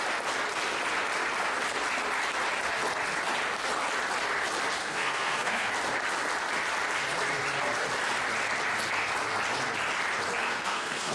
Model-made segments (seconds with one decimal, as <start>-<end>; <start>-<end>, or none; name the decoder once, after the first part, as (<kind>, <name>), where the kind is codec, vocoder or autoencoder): 4.8-5.7 (codec, SNAC); 10.4-11.1